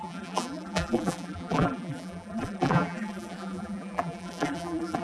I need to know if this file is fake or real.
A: fake